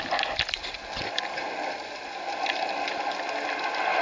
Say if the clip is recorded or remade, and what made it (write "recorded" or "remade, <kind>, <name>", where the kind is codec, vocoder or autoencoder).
recorded